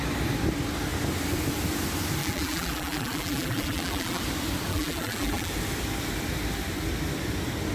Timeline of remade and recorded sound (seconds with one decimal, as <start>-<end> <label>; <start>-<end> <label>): 0.0-2.2 recorded; 2.2-4.2 remade; 4.2-4.7 recorded; 4.7-5.5 remade; 5.5-7.7 recorded

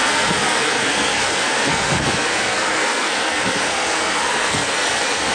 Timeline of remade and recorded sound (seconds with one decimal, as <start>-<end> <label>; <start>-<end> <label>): 0.0-5.3 remade

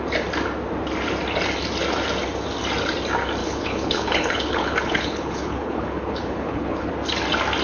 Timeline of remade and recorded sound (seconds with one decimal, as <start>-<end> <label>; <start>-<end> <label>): 0.0-3.4 recorded; 3.4-6.9 remade; 6.9-7.6 recorded